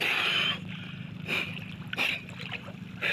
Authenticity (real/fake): real